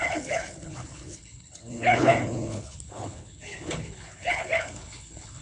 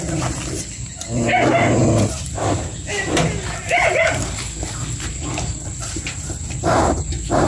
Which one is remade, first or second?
first